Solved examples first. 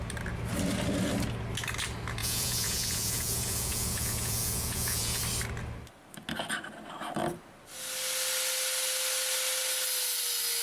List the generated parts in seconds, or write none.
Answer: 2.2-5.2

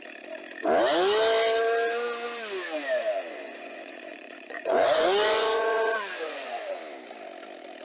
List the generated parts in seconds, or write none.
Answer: 3.3-6.8

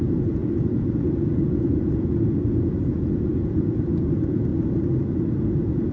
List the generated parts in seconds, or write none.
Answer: 0.0-4.5; 5.5-5.9